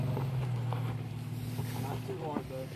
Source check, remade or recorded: recorded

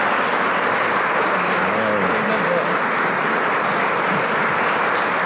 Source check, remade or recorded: recorded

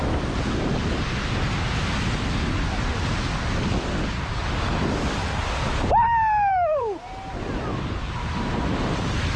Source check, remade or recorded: recorded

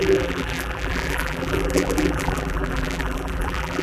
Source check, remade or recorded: remade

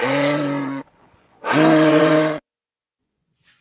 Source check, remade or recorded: remade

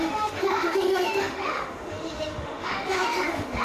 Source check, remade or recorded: remade